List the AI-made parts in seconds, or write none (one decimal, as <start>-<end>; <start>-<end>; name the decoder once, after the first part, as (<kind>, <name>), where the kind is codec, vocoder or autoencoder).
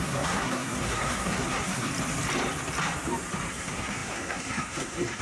0.0-1.9 (codec, SNAC); 3.5-5.2